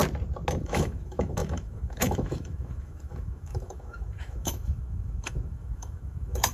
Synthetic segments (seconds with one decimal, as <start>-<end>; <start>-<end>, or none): 0.6-6.5